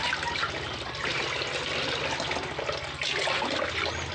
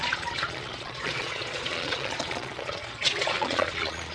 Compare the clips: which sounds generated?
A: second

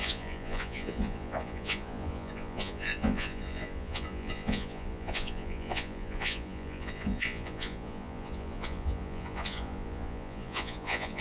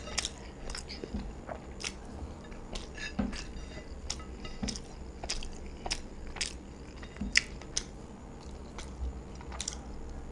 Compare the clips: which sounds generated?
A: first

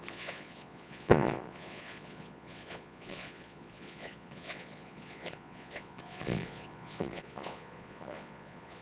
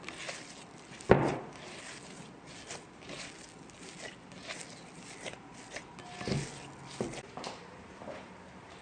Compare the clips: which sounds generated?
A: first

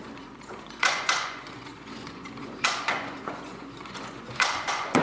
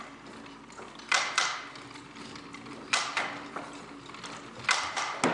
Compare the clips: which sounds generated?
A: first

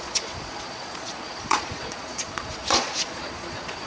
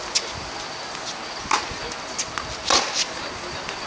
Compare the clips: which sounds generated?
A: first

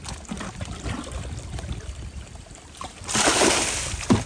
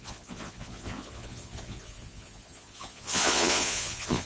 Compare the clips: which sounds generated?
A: second